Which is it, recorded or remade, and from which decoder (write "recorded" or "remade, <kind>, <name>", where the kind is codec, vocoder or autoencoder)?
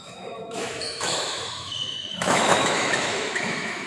remade, autoencoder, DAC-VAE